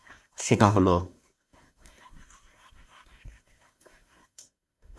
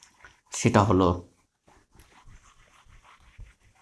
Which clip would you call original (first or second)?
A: second